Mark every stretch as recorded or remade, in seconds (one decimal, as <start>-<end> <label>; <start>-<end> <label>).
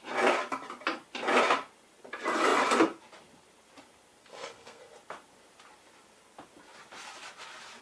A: 0.0-4.2 recorded; 4.2-4.8 remade; 4.8-7.8 recorded